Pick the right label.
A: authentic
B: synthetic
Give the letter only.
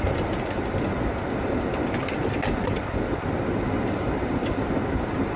A